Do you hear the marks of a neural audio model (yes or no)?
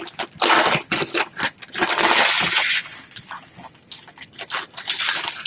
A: no